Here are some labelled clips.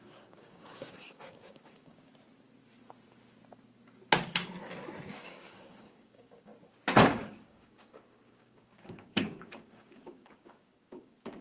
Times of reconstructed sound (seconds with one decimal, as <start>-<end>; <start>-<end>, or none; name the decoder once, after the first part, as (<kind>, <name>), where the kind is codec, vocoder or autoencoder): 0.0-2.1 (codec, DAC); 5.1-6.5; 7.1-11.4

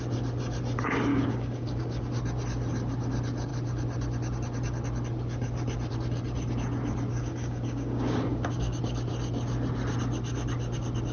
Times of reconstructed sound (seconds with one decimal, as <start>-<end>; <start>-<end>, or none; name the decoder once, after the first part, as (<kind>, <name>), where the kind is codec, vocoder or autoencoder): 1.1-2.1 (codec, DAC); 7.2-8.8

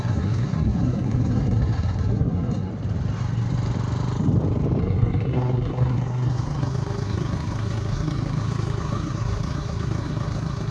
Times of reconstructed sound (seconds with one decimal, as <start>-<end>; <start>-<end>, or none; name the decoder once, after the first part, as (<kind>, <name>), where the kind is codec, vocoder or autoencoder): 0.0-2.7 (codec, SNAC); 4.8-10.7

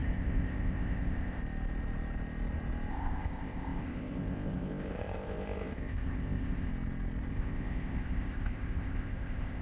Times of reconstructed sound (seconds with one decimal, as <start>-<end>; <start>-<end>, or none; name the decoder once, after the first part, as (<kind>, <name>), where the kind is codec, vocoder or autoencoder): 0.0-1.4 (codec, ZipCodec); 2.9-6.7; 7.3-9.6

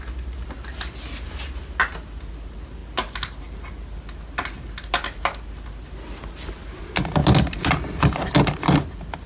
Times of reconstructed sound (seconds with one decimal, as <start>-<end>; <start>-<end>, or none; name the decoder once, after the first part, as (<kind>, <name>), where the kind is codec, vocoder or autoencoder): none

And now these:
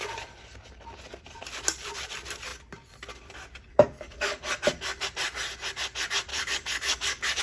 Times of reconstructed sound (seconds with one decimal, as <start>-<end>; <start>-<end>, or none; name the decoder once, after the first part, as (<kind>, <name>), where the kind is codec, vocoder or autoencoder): 3.7-4.4 (codec, DAC); 6.3-7.4